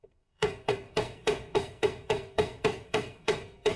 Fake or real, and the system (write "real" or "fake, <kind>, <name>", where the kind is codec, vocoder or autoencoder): fake, codec, SNAC